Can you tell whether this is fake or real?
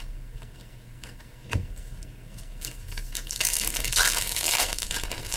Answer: fake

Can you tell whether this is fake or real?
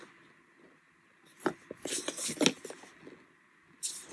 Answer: real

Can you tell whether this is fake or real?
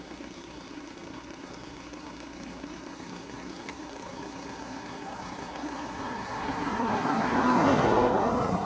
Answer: fake